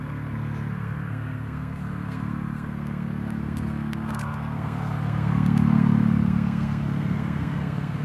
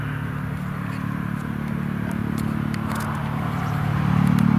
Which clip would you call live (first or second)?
second